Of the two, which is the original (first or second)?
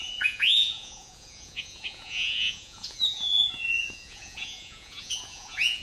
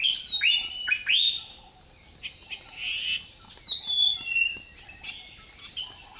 second